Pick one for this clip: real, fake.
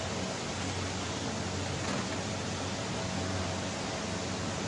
real